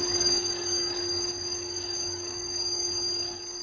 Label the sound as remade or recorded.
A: remade